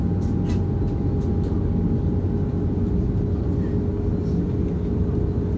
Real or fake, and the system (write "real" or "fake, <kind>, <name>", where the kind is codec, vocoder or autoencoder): real